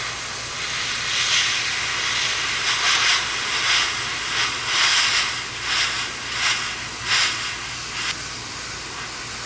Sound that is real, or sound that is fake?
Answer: real